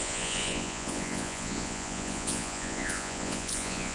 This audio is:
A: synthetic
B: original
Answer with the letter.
A